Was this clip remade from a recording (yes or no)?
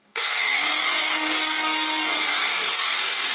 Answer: yes